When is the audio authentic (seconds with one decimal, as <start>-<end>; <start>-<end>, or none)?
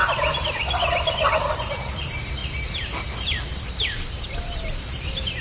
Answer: 0.0-1.4; 2.4-3.0